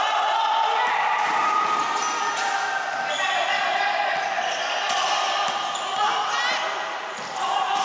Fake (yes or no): no